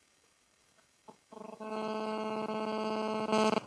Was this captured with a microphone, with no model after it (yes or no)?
no